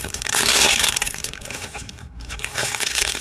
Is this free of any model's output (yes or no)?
no